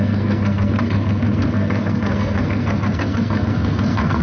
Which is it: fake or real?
fake